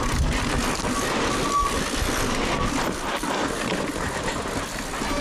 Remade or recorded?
recorded